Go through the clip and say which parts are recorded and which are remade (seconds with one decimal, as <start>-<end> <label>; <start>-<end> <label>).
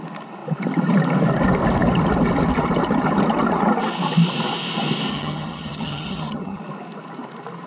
0.0-5.1 recorded; 5.1-6.6 remade; 6.6-7.7 recorded